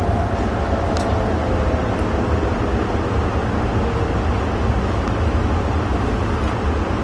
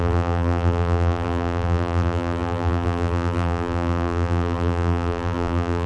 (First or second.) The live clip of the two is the first